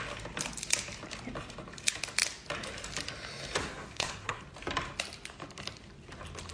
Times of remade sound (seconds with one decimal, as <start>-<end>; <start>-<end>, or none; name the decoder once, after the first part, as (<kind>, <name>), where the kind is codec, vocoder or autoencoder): 3.6-4.4 (codec, SNAC)